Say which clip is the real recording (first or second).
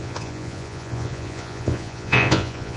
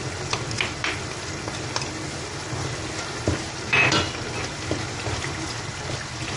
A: second